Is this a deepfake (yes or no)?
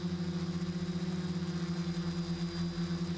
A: no